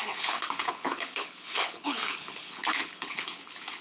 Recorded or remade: remade